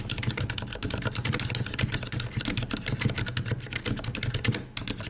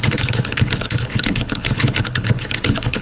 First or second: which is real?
first